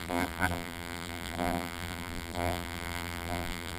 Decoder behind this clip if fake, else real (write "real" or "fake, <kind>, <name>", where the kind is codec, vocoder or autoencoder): fake, vocoder, BigVGAN v2